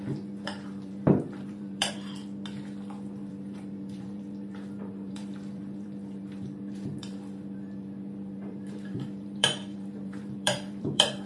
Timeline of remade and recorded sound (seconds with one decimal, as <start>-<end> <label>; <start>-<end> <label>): 0.0-2.2 remade; 2.2-3.3 recorded; 3.3-11.3 remade